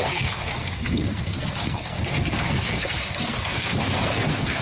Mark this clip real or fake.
fake